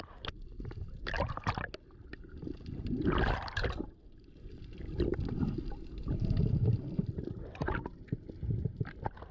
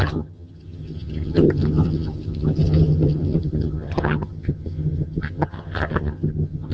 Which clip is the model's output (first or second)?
second